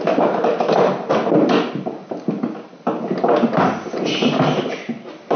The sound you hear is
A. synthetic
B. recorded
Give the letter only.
B